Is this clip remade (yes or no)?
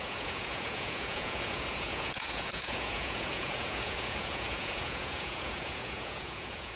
yes